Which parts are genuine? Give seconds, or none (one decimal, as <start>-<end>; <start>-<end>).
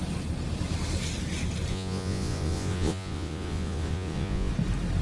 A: 0.0-1.7; 4.5-5.0